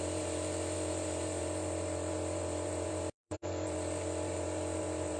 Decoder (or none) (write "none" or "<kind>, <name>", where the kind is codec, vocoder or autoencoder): vocoder, BigVGAN v2